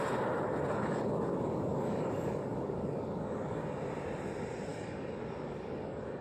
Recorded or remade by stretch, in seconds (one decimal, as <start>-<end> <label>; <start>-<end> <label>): 0.0-0.8 recorded; 0.8-3.7 remade; 3.7-4.7 recorded; 4.7-6.2 remade